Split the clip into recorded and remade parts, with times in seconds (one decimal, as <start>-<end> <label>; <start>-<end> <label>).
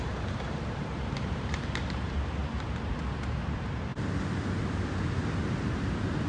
0.0-2.4 remade; 2.4-2.9 recorded; 2.9-3.9 remade; 3.9-6.3 recorded